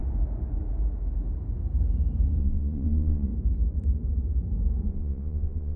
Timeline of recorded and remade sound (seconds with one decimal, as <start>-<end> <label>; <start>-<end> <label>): 0.0-2.4 recorded; 2.4-3.3 remade; 3.3-4.8 recorded; 4.8-5.8 remade